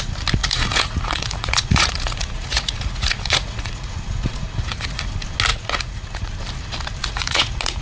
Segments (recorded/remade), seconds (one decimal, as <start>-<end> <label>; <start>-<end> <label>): 0.0-0.4 recorded; 0.4-5.1 remade; 5.1-5.5 recorded; 5.5-6.3 remade; 6.3-7.0 recorded; 7.0-7.8 remade